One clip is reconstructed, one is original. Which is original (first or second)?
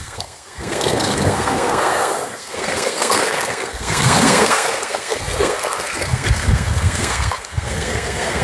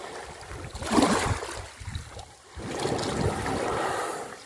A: second